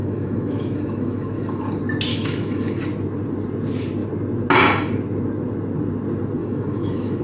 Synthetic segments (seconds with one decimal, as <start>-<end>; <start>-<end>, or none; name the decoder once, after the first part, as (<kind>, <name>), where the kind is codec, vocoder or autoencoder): 0.0-1.6 (autoencoder, DAC-VAE); 2.1-2.8; 6.4-7.2